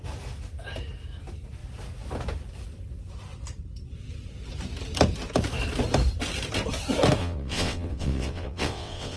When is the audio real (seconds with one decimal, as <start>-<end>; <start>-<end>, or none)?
0.0-7.2